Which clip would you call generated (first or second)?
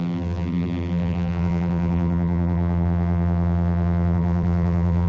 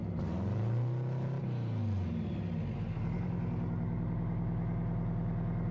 first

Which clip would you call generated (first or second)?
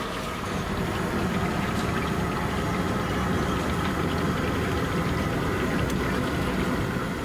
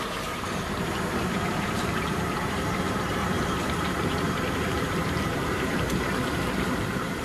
second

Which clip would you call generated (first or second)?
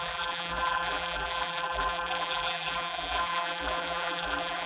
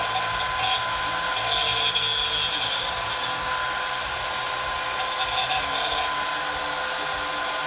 first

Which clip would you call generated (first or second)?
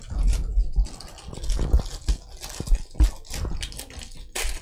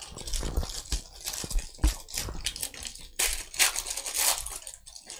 second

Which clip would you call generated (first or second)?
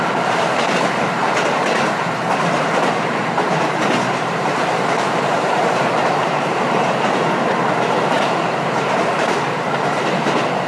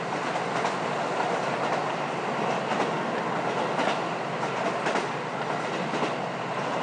first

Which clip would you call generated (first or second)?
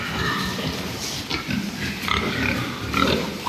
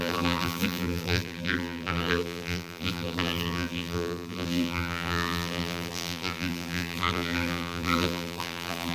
second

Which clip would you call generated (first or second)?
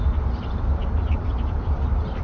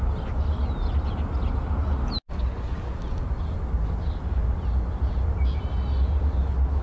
first